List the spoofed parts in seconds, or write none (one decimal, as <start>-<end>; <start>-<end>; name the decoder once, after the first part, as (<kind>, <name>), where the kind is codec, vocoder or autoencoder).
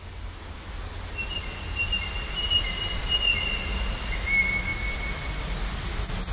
none